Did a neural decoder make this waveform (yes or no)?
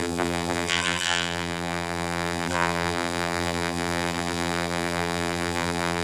yes